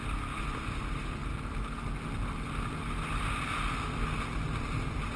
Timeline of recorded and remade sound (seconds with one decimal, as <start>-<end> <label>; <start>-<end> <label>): 0.0-5.2 recorded